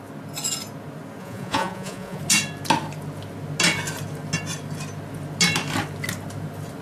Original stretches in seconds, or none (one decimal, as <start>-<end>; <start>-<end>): 0.0-1.2; 2.2-6.8